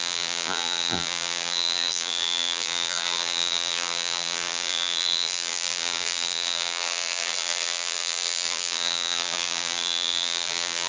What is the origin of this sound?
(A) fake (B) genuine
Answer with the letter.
A